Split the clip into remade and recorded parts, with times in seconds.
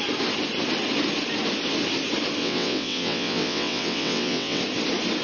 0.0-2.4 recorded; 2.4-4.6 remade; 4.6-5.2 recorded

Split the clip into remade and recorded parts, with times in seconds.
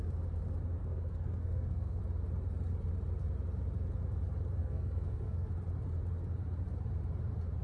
0.0-0.8 recorded; 0.8-2.0 remade; 2.0-4.6 recorded; 4.6-5.5 remade; 5.5-7.6 recorded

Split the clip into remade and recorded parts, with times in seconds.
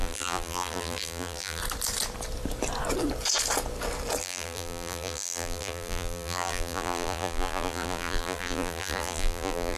0.0-1.6 remade; 1.6-4.2 recorded; 4.2-9.8 remade